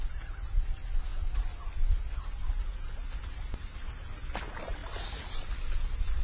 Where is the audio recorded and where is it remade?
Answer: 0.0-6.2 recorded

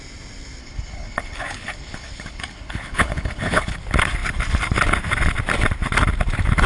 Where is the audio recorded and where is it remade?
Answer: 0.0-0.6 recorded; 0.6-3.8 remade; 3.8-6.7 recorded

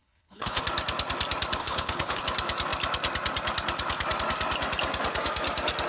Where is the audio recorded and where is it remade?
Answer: 0.0-0.6 remade; 0.6-1.6 recorded; 1.6-2.2 remade; 2.2-5.9 recorded